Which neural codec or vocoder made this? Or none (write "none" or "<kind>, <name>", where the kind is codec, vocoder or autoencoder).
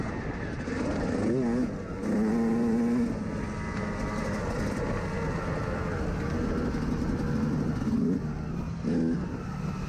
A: none